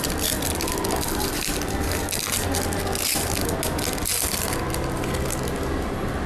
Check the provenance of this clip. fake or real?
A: real